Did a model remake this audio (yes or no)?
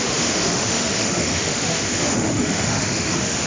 yes